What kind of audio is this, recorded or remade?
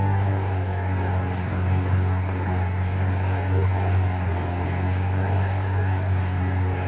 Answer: remade